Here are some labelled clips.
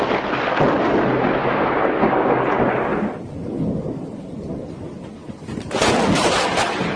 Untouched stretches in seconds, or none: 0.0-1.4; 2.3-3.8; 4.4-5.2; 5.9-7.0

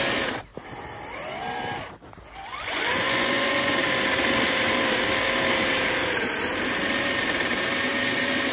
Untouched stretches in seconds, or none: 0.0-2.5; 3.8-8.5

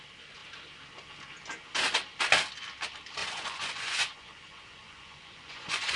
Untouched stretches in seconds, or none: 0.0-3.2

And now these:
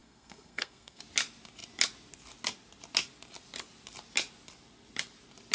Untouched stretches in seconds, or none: 1.0-5.5

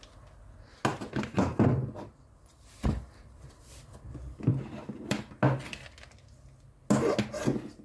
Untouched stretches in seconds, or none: 0.0-0.9; 3.6-4.5; 5.3-7.8